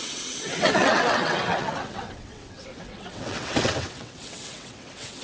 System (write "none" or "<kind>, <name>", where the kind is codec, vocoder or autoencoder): vocoder, WaveNeXt